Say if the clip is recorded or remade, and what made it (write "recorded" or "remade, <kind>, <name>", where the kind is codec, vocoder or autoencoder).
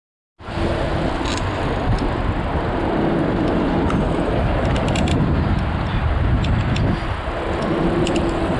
recorded